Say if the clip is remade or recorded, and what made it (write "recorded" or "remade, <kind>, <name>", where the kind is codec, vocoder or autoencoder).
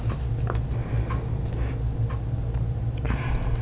recorded